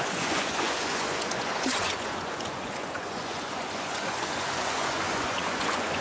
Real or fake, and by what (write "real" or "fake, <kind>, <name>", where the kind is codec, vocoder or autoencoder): fake, vocoder, Vocos